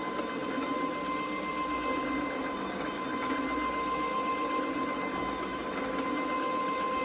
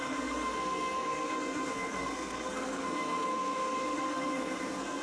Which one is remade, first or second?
second